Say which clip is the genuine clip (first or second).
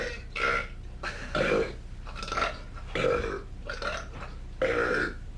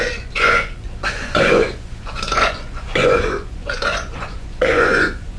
first